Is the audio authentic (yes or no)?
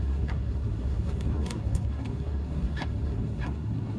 no